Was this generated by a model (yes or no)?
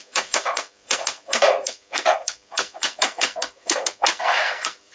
yes